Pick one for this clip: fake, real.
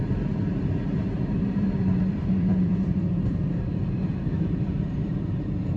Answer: fake